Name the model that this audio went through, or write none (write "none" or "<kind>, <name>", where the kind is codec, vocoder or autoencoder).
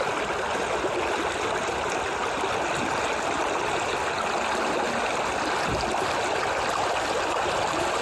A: none